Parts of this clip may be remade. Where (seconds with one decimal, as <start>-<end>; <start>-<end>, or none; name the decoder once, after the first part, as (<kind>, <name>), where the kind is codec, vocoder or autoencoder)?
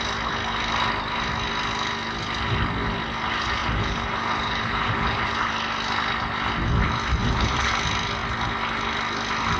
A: 3.6-5.5 (vocoder, BigVGAN v2); 7.2-7.7